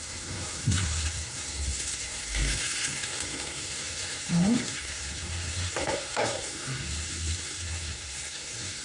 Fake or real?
fake